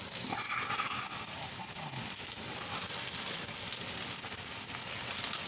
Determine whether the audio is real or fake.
real